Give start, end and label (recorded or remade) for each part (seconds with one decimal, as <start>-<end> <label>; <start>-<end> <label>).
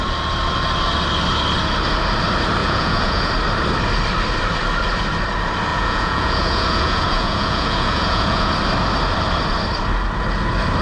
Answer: 0.0-2.6 recorded; 2.6-3.3 remade; 3.3-5.7 recorded; 5.7-8.5 remade; 8.5-10.8 recorded